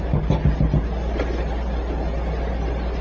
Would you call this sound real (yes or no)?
yes